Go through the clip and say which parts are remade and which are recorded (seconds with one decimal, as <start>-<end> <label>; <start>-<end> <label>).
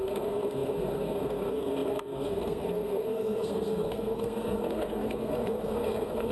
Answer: 0.0-6.3 remade